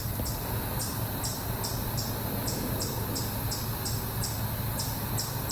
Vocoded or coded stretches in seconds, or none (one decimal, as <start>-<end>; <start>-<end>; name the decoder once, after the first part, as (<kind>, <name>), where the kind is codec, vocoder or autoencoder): none